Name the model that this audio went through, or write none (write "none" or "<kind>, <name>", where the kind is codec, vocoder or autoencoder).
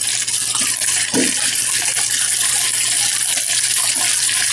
none